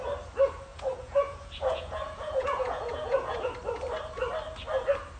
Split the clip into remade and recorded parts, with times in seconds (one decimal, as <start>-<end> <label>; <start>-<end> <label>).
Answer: 0.0-0.7 recorded; 0.7-3.5 remade; 3.5-5.2 recorded